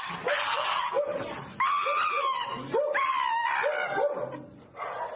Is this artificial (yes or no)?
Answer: no